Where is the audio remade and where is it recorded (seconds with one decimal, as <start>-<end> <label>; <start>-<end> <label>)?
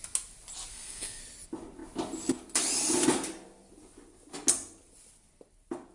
0.0-0.7 recorded; 0.7-1.2 remade; 1.2-5.9 recorded